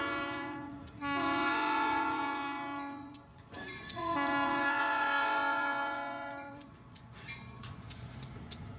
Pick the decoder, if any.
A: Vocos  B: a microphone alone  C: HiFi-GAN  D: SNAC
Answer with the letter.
A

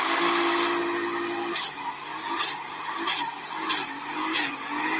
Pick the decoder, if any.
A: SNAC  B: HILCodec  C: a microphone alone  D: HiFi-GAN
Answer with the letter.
C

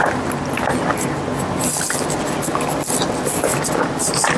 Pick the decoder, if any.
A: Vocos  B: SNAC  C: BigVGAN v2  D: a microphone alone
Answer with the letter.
D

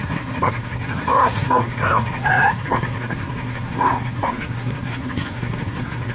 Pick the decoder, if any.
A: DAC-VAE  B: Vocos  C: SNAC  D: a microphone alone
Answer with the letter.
C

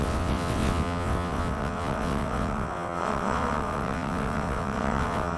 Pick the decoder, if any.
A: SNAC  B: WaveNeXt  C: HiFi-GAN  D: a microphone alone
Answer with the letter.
B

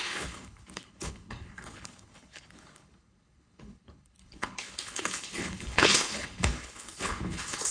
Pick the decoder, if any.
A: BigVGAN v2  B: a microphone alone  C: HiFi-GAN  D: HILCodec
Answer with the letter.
D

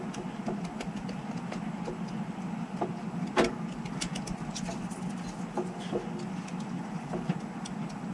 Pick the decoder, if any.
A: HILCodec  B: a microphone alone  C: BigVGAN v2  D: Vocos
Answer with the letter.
B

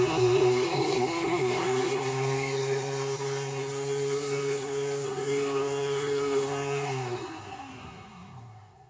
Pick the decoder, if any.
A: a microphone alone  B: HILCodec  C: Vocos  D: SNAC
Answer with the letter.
D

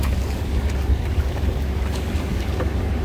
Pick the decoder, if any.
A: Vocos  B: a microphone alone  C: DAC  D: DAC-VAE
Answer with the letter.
C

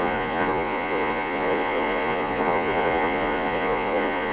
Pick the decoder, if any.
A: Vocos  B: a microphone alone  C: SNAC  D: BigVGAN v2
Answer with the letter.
A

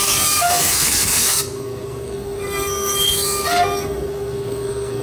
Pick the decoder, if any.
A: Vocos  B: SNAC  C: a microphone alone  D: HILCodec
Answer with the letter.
B